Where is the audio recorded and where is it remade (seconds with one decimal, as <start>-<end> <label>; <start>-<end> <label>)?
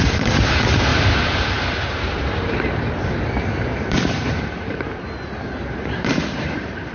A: 0.0-6.9 remade